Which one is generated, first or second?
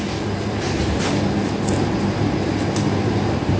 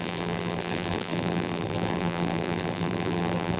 second